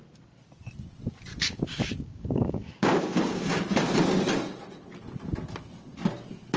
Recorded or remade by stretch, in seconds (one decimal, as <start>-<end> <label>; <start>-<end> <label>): 0.0-1.3 recorded; 1.3-3.6 remade; 3.6-6.6 recorded